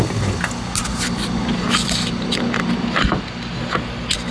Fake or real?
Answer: real